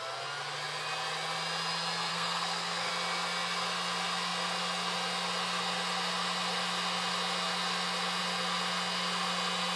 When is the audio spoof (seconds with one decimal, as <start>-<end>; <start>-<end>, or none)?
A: 2.1-2.9